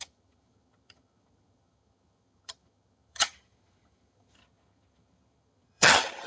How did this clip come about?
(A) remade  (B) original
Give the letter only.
A